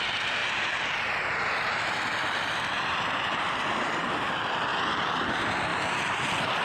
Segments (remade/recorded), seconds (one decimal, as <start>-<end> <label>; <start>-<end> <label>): 0.0-4.7 remade; 4.7-5.3 recorded; 5.3-5.7 remade; 5.7-6.6 recorded